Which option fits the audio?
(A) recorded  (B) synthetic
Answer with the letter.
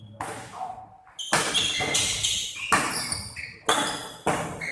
A